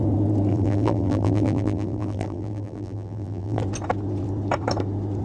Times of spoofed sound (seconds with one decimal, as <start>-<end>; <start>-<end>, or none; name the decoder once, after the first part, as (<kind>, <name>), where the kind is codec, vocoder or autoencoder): 0.5-3.6 (vocoder, BigVGAN v2)